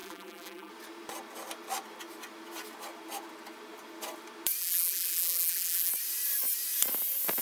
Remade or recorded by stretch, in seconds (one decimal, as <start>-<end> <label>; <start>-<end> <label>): 0.0-0.7 remade; 0.7-4.6 recorded; 4.6-5.9 remade; 5.9-7.4 recorded